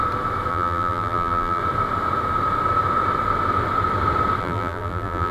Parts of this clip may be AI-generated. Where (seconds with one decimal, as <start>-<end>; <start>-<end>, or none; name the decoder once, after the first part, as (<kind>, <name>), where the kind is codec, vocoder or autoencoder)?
0.5-1.6 (vocoder, BigVGAN v2); 4.4-5.3